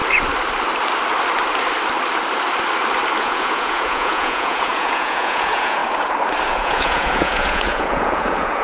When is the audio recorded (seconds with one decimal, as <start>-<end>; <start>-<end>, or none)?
0.0-3.2; 5.8-6.5